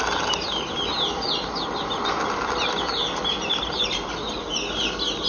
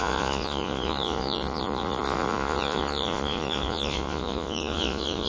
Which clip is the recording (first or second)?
first